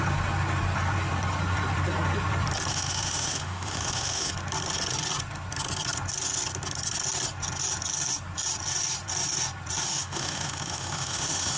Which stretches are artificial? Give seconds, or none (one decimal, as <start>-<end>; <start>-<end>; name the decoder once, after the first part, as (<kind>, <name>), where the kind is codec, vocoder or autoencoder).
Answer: 2.7-4.3 (autoencoder, DAC-VAE); 9.9-11.6